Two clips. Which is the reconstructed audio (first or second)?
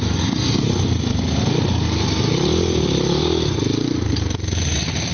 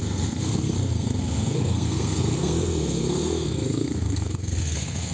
second